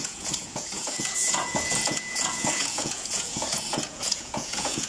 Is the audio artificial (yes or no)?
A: yes